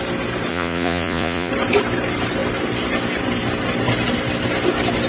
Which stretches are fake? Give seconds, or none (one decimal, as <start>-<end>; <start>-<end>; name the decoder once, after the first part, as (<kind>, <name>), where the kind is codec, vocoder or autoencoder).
0.5-1.5 (vocoder, Vocos)